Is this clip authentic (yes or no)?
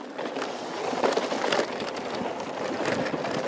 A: yes